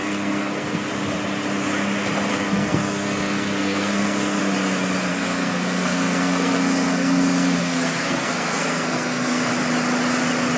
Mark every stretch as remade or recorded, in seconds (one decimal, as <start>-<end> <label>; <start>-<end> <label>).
0.0-0.9 remade; 0.9-2.3 recorded; 2.3-4.4 remade; 4.4-5.1 recorded; 5.1-9.5 remade; 9.5-10.6 recorded

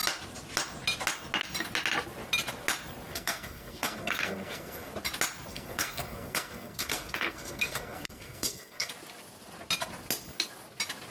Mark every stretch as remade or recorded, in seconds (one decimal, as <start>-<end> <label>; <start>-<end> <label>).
0.0-3.1 recorded; 3.1-4.9 remade; 4.9-5.5 recorded; 5.5-8.9 remade; 8.9-11.1 recorded

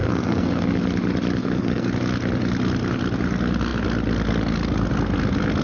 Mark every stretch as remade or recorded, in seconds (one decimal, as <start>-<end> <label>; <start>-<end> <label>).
0.0-0.6 remade; 0.6-1.4 recorded; 1.4-1.9 remade; 1.9-5.6 recorded

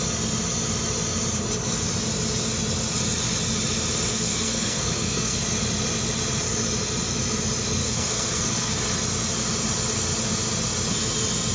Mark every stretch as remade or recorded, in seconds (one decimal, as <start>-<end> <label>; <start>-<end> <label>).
0.0-4.1 recorded; 4.1-5.4 remade; 5.4-7.8 recorded; 7.8-8.8 remade; 8.8-11.5 recorded

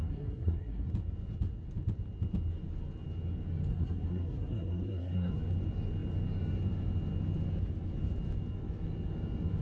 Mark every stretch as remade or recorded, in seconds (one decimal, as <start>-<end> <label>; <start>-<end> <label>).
0.0-0.9 remade; 0.9-3.7 recorded; 3.7-5.3 remade; 5.3-9.6 recorded

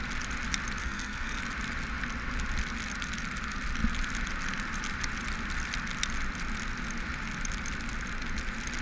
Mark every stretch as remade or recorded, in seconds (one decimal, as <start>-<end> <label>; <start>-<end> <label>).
0.0-0.8 recorded; 0.8-1.4 remade; 1.4-8.8 recorded

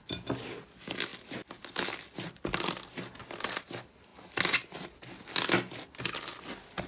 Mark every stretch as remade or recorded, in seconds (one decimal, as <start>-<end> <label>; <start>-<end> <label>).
0.0-6.9 recorded